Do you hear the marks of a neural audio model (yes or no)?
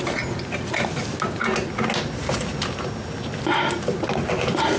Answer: no